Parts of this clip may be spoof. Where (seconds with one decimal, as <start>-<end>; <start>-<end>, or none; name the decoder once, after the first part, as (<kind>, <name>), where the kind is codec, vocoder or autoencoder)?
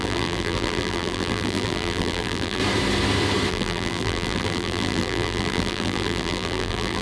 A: 0.0-2.6 (vocoder, BigVGAN v2); 3.5-7.0